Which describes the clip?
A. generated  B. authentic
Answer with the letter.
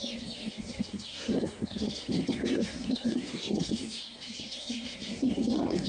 A